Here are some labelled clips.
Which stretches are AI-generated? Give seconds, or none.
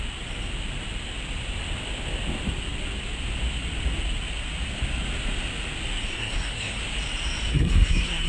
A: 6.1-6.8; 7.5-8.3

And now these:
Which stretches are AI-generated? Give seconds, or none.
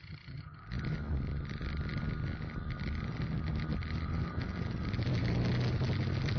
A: 0.0-0.6